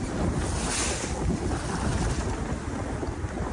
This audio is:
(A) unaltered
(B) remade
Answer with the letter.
A